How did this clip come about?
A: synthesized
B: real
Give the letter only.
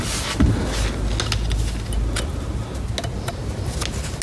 B